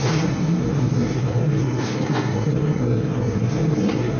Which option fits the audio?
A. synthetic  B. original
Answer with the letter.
A